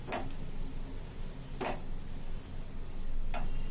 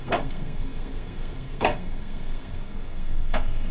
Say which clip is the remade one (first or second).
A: second